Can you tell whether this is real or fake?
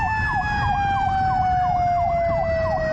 real